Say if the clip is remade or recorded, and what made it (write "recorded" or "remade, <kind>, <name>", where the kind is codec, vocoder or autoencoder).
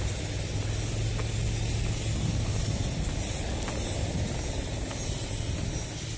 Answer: recorded